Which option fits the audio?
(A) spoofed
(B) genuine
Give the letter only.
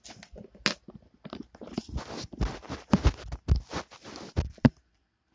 B